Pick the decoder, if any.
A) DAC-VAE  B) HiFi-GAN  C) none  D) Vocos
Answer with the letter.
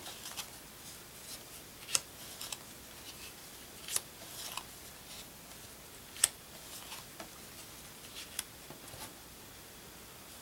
C